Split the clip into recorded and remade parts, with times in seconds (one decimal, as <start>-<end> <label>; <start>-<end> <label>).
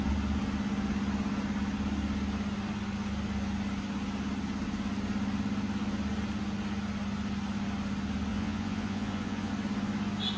0.0-8.3 recorded; 8.3-9.5 remade; 9.5-10.4 recorded